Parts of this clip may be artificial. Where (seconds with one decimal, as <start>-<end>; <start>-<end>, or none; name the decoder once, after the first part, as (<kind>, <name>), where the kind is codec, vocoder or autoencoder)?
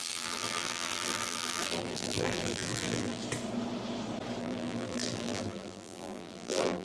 0.0-3.2 (vocoder, BigVGAN v2); 4.4-6.8